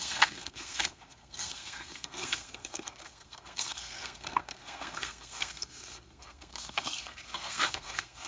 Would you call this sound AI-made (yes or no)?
yes